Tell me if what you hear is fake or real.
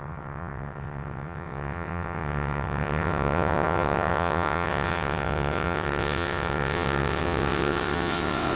fake